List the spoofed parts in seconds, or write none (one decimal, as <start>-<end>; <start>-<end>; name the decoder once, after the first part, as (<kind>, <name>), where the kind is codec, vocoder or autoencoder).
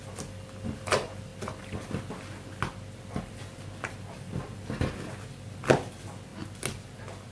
none